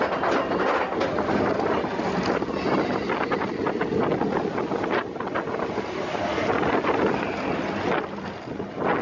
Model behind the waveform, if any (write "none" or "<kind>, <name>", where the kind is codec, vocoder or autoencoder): none